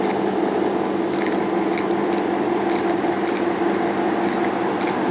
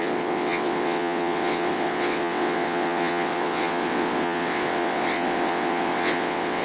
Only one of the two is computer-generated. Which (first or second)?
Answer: second